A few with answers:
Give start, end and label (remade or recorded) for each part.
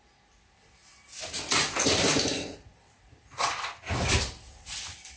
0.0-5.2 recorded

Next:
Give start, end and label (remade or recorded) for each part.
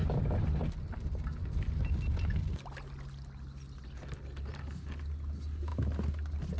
0.0-6.6 recorded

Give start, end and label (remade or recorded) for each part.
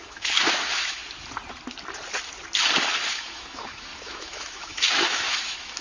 0.0-1.0 remade; 1.0-3.1 recorded; 3.1-5.8 remade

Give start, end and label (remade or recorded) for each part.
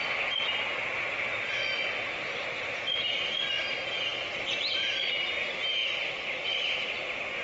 0.0-7.4 recorded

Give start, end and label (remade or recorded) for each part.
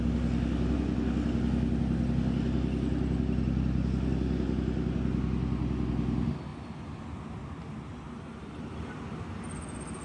0.0-6.5 recorded; 6.5-8.8 remade; 8.8-10.0 recorded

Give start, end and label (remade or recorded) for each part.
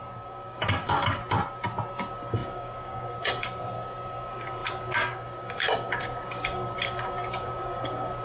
0.0-1.2 remade; 1.2-1.9 recorded; 1.9-8.2 remade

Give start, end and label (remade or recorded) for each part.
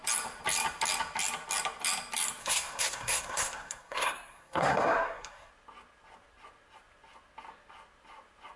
0.0-2.4 recorded; 2.4-5.5 remade; 5.5-8.6 recorded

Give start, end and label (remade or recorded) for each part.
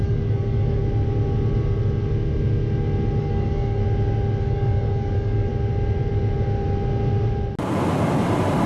0.0-0.8 remade; 0.8-3.2 recorded; 3.2-3.8 remade; 3.8-4.4 recorded; 4.4-5.5 remade; 5.5-8.7 recorded